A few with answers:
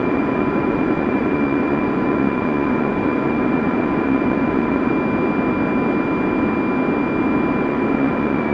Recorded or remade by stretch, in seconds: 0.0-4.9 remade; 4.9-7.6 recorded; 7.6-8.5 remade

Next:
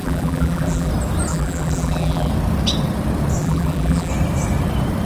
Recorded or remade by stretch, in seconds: 0.0-0.9 remade; 0.9-1.3 recorded; 1.3-2.3 remade; 2.3-3.4 recorded; 3.4-4.1 remade; 4.1-5.1 recorded